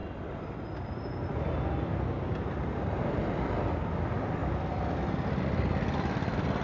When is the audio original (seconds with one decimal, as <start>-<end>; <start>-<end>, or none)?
0.0-6.6